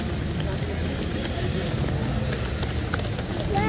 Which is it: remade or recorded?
recorded